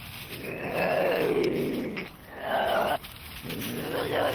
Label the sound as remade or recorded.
recorded